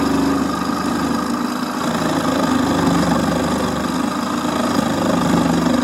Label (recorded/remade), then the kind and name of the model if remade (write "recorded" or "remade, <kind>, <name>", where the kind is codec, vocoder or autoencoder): recorded